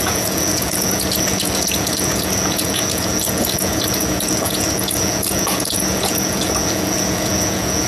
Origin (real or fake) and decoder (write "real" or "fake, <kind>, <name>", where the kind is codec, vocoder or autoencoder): fake, vocoder, Vocos